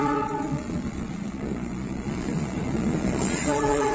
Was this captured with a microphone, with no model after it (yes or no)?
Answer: no